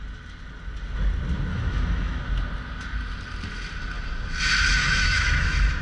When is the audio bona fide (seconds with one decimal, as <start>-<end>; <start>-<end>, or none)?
0.0-1.5; 2.2-4.8